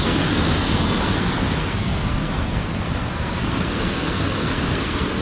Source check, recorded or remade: remade